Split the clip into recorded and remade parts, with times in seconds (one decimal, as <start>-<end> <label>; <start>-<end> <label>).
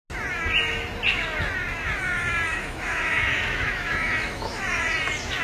0.0-2.5 recorded; 2.5-4.6 remade; 4.6-5.4 recorded